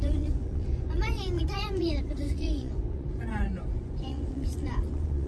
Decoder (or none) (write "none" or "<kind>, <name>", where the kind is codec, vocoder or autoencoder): vocoder, Vocos